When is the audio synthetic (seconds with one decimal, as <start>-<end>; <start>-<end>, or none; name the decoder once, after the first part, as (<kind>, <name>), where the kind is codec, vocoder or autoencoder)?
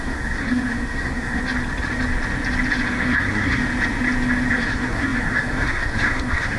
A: 0.0-1.4 (codec, SNAC); 2.9-3.6; 4.5-6.6